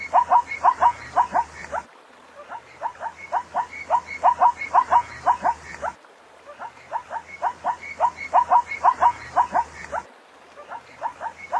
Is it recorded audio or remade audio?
recorded